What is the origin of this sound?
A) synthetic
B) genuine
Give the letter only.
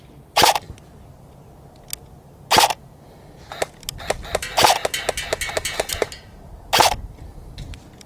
B